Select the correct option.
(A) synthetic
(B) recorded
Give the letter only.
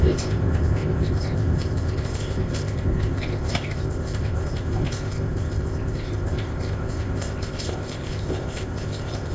A